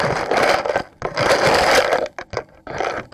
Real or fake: real